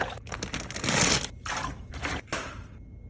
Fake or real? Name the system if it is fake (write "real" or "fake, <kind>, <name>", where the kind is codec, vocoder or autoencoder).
real